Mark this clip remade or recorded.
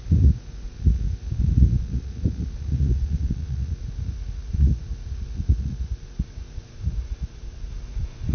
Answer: remade